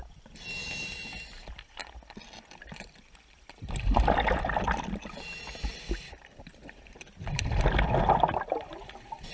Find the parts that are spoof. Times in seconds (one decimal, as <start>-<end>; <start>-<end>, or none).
none